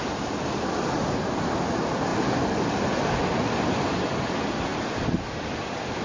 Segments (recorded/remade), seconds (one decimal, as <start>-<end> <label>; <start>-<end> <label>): 0.0-6.0 recorded